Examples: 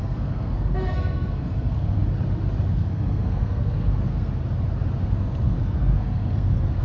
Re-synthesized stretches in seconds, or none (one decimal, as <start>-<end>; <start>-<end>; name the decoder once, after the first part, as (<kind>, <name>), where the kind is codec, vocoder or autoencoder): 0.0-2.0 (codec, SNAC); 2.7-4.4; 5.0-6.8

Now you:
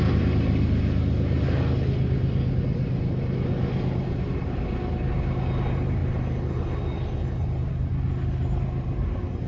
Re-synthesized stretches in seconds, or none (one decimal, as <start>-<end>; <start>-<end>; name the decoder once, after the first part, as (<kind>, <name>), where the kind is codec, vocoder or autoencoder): none

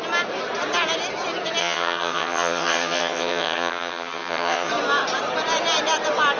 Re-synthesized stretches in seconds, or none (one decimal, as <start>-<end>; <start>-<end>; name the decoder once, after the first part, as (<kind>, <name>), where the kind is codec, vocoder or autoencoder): 1.6-4.7 (vocoder, HiFi-GAN)

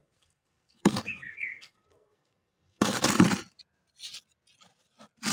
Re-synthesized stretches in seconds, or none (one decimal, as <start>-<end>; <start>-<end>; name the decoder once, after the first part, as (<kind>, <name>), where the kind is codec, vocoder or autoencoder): 0.0-3.0 (codec, SNAC)

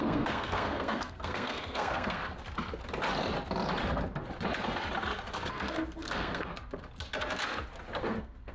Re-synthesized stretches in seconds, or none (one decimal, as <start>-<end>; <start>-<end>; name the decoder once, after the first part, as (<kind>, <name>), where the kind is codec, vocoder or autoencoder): 0.0-2.2 (codec, SNAC); 5.5-6.5; 8.0-8.5

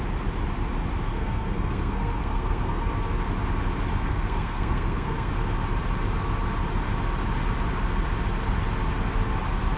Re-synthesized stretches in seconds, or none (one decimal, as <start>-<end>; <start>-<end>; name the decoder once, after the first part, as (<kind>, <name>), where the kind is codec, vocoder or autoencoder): 1.1-2.8 (codec, SNAC); 4.1-5.3

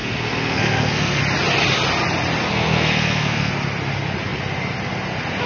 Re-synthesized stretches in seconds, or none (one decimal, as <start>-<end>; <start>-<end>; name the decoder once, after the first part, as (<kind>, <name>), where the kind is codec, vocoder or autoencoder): 0.0-1.2 (codec, SNAC); 2.4-3.5